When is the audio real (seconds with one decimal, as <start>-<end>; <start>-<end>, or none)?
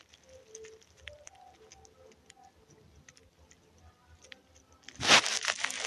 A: 0.0-5.9